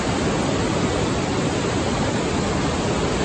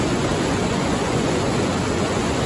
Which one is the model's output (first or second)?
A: second